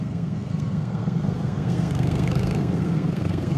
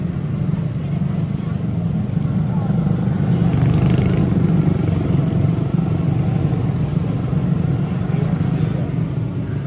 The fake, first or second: first